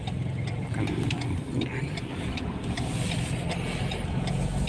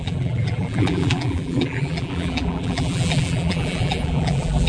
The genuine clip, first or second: first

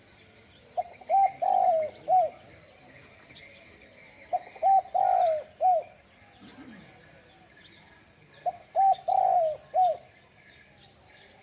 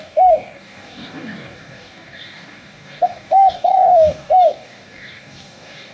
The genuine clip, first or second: first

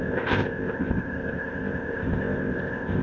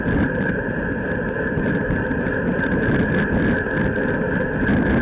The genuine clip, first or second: second